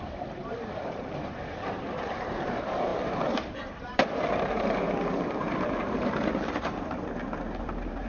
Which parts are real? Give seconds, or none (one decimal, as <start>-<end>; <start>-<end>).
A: none